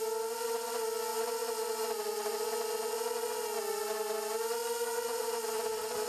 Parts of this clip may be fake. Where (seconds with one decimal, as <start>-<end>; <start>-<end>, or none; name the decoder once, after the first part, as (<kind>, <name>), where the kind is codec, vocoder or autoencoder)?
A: none